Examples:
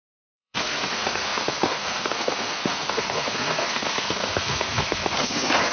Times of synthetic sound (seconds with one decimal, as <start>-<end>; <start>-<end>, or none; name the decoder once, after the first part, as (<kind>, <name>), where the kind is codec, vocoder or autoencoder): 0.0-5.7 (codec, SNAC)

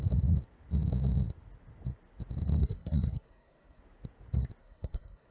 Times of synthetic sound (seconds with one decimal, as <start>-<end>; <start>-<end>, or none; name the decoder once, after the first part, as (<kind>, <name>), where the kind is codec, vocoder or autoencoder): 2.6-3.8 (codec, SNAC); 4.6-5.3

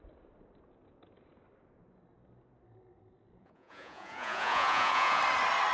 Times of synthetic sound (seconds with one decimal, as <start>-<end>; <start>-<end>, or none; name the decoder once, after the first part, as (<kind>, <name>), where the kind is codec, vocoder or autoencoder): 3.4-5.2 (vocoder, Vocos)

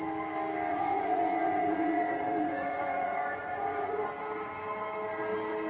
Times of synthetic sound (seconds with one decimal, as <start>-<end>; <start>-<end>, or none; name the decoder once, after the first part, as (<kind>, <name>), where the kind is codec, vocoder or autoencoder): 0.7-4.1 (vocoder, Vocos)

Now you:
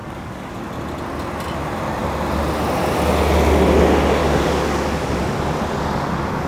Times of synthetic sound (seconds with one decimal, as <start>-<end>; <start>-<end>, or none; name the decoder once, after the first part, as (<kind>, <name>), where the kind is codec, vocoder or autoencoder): 0.0-0.6 (codec, DAC); 4.2-5.2

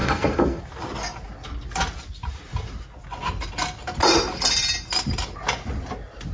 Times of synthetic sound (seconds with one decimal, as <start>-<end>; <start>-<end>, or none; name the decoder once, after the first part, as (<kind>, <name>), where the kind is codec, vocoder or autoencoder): 0.0-0.6 (codec, SNAC)

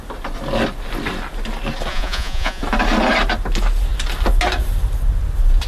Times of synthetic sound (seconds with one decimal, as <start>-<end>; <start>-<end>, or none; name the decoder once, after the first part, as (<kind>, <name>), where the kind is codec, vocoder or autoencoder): 1.9-2.6 (vocoder, Vocos)

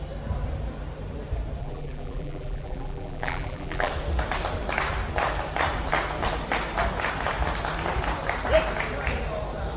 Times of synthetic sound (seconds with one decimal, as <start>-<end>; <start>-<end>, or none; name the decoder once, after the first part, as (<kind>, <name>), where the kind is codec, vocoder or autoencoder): 1.6-3.9 (vocoder, BigVGAN v2)